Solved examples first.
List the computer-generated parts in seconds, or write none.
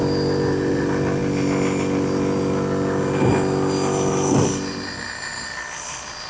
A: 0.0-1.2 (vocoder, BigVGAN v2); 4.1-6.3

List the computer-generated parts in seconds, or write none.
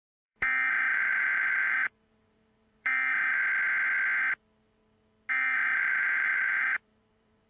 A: 0.0-3.4 (vocoder, BigVGAN v2); 5.3-7.5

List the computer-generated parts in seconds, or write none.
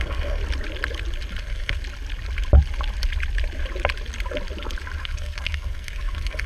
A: 0.0-0.4 (codec, SNAC); 1.4-1.8; 5.0-6.5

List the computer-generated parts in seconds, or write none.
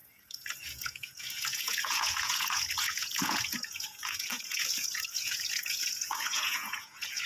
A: 0.0-7.3 (vocoder, Vocos)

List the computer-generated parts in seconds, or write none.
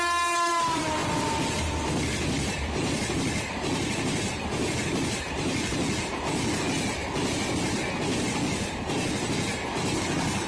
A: 1.0-5.3 (vocoder, BigVGAN v2)